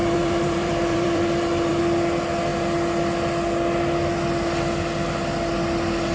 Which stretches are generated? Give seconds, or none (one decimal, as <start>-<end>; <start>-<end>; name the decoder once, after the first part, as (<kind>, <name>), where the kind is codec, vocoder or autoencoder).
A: 0.0-1.8 (vocoder, BigVGAN v2)